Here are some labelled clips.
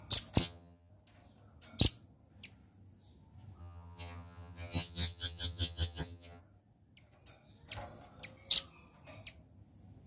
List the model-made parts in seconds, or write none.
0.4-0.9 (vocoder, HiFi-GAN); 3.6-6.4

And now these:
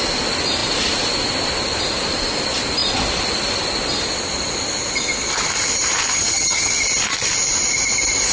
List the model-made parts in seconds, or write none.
6.1-6.7 (vocoder, HiFi-GAN)

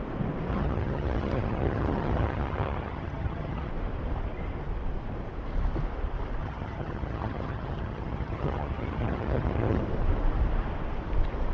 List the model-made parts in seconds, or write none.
0.5-3.7 (vocoder, HiFi-GAN); 6.4-9.8

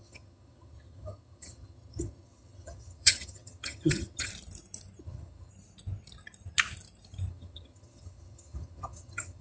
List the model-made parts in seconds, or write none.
0.0-4.3 (vocoder, HiFi-GAN); 5.0-5.5; 7.3-9.4

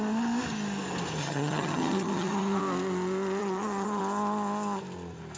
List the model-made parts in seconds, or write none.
1.2-2.6 (vocoder, HiFi-GAN); 3.4-4.0

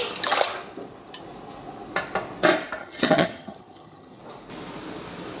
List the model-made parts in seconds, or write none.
2.8-4.2 (vocoder, HiFi-GAN)

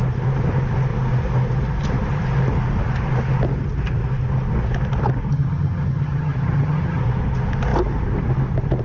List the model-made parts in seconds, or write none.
5.3-7.0 (vocoder, HiFi-GAN)